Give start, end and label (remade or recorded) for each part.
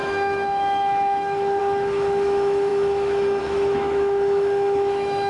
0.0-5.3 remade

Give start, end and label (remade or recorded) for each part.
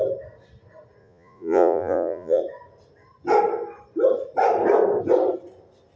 0.0-1.0 recorded; 1.0-2.4 remade; 2.4-6.0 recorded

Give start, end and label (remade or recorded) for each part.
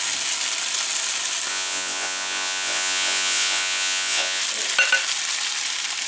0.0-1.5 recorded; 1.5-4.4 remade; 4.4-6.1 recorded